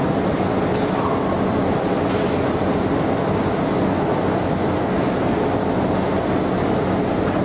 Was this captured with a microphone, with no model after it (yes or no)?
yes